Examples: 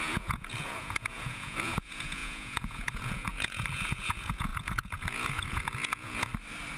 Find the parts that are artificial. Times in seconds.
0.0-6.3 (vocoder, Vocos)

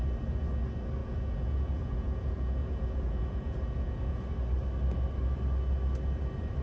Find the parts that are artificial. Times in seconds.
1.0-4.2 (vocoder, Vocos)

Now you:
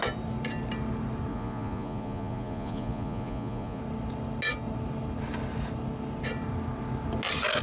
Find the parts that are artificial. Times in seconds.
1.3-3.8 (vocoder, Vocos)

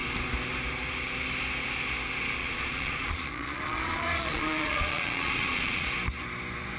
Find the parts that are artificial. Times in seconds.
2.4-5.9 (vocoder, Vocos)